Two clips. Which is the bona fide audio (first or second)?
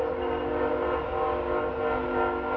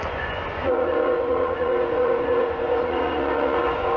first